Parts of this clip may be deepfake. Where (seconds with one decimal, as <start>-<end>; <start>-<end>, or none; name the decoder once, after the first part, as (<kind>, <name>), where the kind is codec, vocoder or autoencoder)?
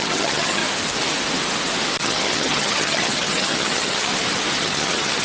0.0-0.6 (vocoder, HiFi-GAN); 2.0-4.1; 4.6-5.2